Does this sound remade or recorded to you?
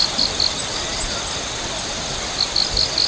recorded